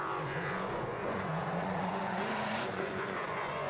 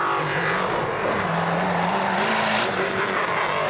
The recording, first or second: second